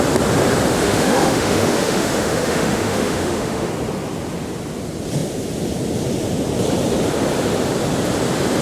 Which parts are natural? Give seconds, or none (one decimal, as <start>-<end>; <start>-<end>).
0.0-0.7; 3.7-8.6